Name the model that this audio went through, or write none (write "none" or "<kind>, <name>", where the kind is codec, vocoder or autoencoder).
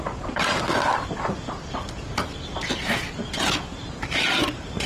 none